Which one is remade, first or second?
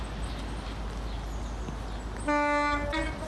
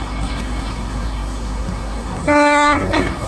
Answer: second